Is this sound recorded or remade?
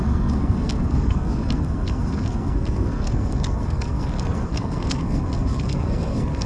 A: remade